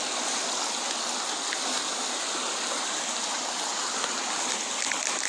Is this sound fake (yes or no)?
no